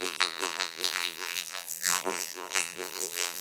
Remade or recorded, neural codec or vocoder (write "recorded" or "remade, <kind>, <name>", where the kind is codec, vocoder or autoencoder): remade, vocoder, BigVGAN v2